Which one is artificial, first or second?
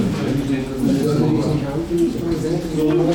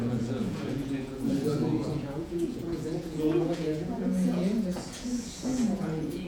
second